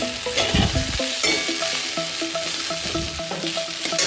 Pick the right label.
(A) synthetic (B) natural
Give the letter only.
B